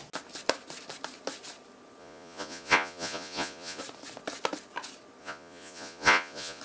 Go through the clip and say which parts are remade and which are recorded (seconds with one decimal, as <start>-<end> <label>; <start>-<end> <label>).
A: 0.0-2.0 recorded; 2.0-3.8 remade; 3.8-5.2 recorded; 5.2-6.6 remade